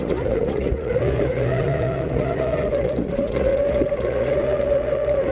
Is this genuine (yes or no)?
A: no